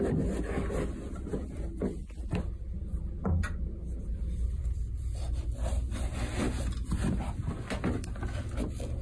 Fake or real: real